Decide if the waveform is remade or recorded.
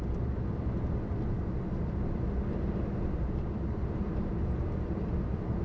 recorded